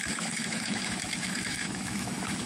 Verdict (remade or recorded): remade